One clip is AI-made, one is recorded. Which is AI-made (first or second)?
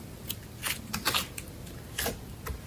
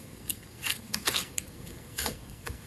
second